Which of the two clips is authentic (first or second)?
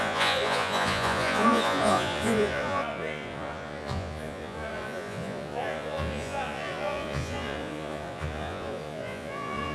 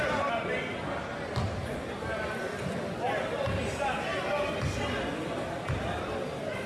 second